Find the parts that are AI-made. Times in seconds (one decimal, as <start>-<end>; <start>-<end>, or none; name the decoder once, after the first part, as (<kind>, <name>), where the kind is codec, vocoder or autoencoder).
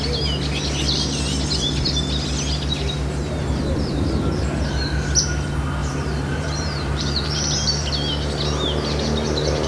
2.7-4.1 (vocoder, BigVGAN v2); 5.8-7.9